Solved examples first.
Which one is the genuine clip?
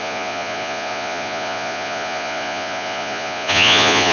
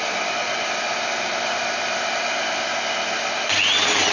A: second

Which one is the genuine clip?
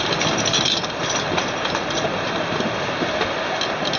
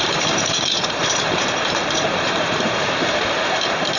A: first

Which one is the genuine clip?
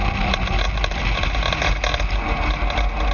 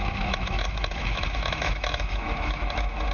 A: first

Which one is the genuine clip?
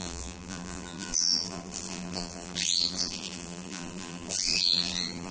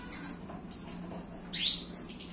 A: second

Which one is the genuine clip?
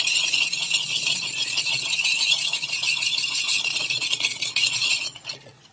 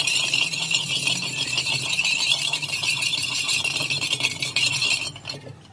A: second